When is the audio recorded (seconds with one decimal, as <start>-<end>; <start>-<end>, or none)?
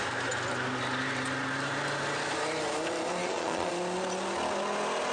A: 0.0-3.2; 3.7-5.1